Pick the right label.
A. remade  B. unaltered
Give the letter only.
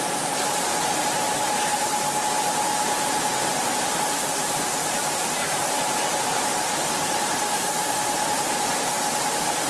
A